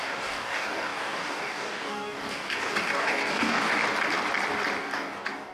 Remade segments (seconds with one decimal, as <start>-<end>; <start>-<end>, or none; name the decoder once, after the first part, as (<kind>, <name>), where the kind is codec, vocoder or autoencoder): 0.0-3.8 (codec, DAC); 4.8-5.5